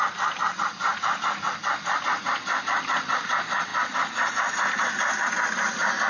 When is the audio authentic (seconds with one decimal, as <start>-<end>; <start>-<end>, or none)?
0.0-6.1